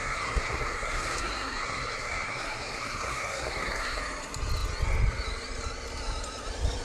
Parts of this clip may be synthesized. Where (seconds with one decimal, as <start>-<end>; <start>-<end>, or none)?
0.0-4.0

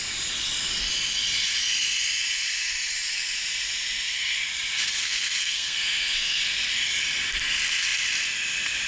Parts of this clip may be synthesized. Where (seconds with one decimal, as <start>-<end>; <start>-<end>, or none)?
4.9-6.4

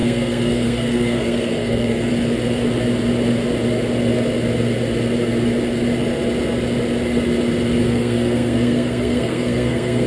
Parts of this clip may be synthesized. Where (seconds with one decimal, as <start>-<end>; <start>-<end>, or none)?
0.0-2.1; 7.8-10.1

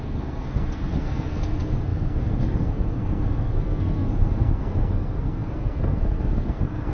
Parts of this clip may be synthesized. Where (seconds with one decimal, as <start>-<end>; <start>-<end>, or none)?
0.0-6.9

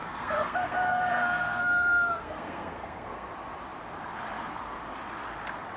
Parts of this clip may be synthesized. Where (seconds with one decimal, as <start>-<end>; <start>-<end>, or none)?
0.0-3.3

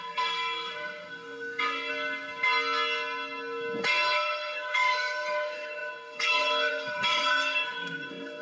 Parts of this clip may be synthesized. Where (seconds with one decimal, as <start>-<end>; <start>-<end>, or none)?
0.0-1.9; 3.8-8.4

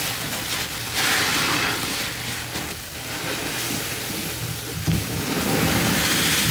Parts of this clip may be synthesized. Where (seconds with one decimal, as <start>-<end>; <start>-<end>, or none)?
none